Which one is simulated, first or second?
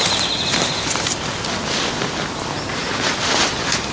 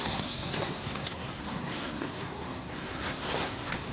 second